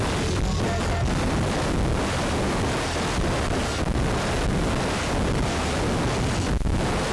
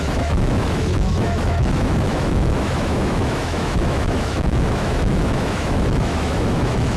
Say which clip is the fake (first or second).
second